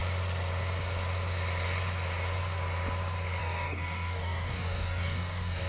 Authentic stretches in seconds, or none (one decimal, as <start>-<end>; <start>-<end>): 0.0-3.4